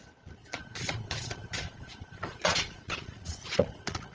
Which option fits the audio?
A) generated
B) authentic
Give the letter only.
A